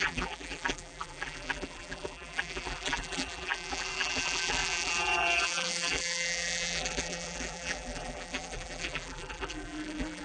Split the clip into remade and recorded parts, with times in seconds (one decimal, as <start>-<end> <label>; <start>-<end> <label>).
0.0-10.2 remade